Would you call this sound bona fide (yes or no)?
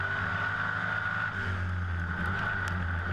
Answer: yes